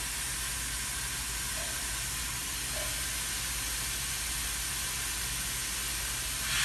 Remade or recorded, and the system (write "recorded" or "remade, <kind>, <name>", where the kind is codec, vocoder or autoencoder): recorded